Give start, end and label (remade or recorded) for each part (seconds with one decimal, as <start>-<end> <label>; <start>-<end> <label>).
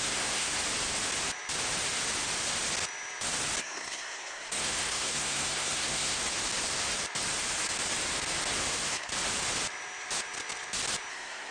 0.0-0.6 remade; 0.6-3.6 recorded; 3.6-6.2 remade; 6.2-8.6 recorded; 8.6-9.1 remade; 9.1-11.1 recorded; 11.1-11.5 remade